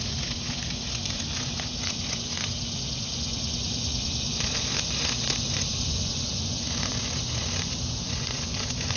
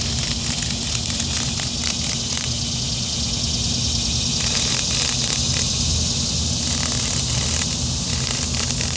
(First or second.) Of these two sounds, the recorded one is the second